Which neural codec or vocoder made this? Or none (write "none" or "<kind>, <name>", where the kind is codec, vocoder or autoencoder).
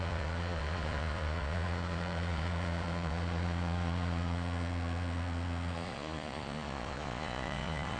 vocoder, Vocos